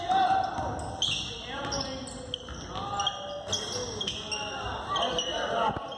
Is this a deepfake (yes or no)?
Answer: no